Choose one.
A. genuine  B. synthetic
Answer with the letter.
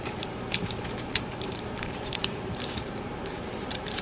B